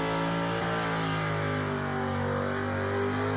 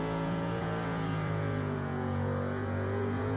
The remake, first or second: second